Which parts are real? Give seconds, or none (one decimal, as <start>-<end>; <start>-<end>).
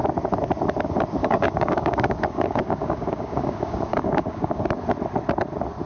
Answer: 0.0-1.2; 4.6-5.9